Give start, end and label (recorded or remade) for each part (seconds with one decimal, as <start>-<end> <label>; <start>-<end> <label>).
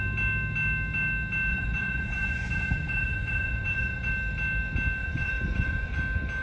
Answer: 0.0-1.5 recorded; 1.5-4.1 remade; 4.1-5.0 recorded; 5.0-6.0 remade; 6.0-6.4 recorded